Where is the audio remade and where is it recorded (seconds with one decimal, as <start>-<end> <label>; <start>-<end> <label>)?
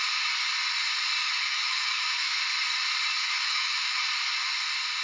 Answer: 0.0-1.2 recorded; 1.2-2.3 remade; 2.3-3.2 recorded; 3.2-4.0 remade; 4.0-5.0 recorded